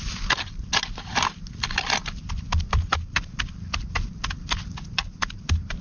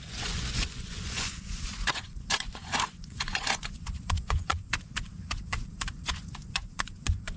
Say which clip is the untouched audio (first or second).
first